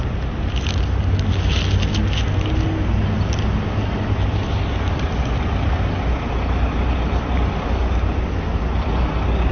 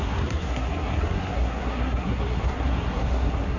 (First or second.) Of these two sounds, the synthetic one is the second